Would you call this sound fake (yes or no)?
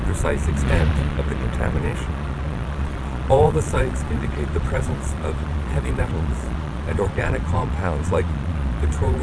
yes